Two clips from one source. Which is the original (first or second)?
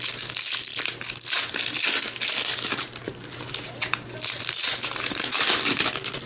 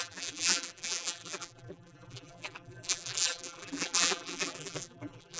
first